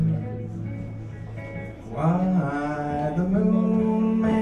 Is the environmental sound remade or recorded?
recorded